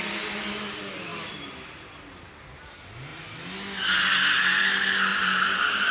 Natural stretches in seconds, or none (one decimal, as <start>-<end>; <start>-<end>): 0.0-5.1